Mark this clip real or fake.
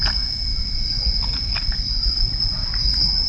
real